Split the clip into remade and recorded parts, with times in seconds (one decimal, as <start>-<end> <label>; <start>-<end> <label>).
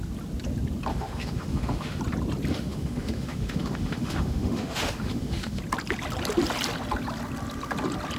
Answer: 0.0-0.9 recorded; 0.9-2.0 remade; 2.0-2.5 recorded; 2.5-5.6 remade; 5.6-8.2 recorded